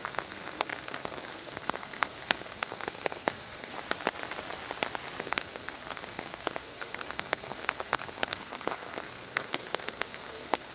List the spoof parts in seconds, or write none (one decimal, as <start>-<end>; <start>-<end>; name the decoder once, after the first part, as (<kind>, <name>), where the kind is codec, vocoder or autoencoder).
0.0-3.7 (codec, SNAC); 5.2-10.7